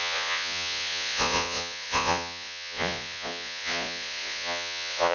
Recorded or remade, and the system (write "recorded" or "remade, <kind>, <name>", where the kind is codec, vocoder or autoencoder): remade, vocoder, Vocos